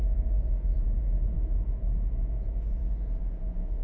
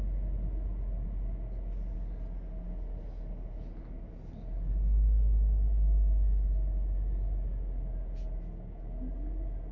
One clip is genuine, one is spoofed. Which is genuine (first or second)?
second